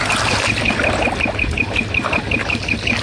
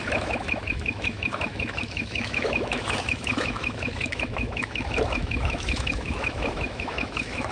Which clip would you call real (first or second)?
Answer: first